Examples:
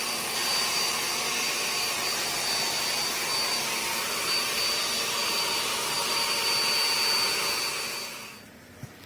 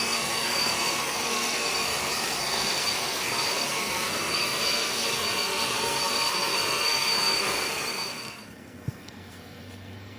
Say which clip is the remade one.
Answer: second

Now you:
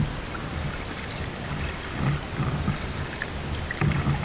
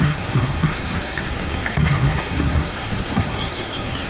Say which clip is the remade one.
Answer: second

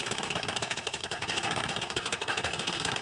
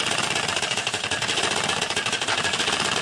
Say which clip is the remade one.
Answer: first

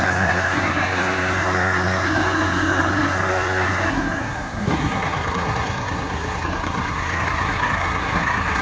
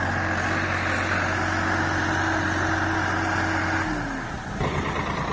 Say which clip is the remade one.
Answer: first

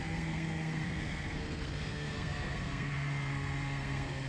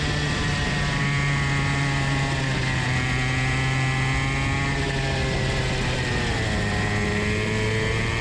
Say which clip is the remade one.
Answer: first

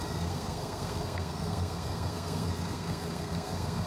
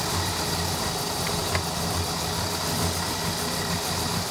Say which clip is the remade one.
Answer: first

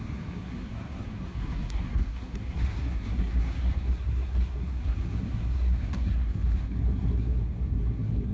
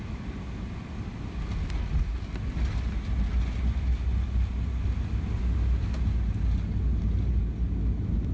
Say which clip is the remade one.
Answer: first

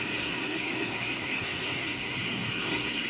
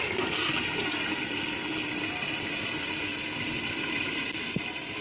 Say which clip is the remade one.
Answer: first